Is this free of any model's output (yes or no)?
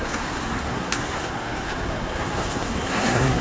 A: no